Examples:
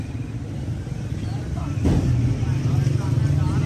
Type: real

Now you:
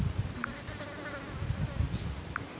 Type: real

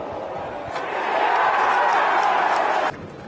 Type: real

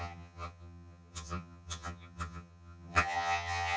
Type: fake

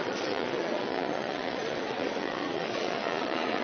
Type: fake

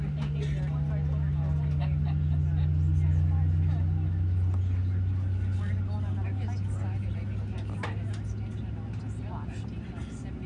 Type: real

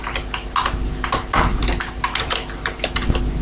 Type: real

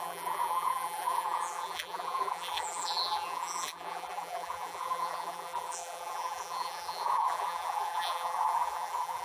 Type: fake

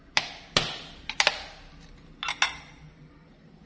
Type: real